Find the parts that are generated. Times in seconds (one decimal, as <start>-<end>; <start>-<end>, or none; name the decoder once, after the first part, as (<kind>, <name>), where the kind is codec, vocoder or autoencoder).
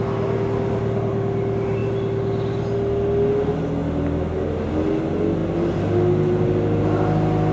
none